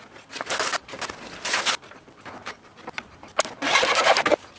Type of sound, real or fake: real